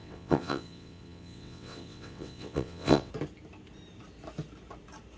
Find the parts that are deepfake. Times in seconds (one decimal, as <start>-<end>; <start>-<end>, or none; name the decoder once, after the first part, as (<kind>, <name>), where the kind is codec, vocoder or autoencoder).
0.0-3.1 (vocoder, WaveNeXt)